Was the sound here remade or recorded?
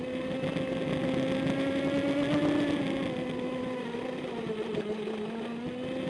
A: recorded